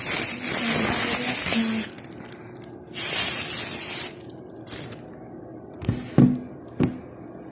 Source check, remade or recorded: recorded